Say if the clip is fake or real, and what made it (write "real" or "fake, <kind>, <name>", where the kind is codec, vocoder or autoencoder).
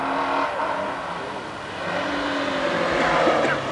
real